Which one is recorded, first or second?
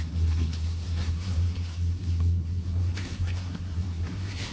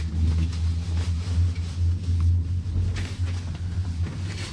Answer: second